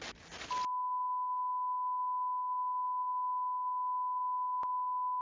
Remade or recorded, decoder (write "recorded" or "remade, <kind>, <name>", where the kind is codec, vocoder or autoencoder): recorded